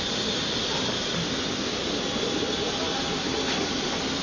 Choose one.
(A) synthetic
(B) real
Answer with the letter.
B